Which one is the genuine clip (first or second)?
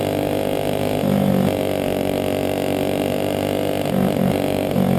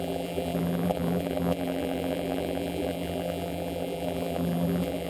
first